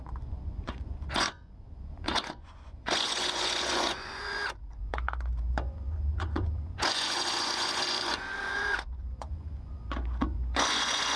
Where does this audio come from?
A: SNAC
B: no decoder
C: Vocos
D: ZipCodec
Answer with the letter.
C